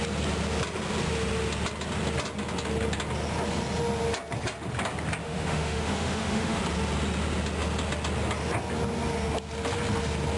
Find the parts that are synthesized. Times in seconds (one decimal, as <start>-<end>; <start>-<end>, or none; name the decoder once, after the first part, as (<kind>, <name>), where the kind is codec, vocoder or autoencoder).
5.2-6.6 (autoencoder, DAC-VAE)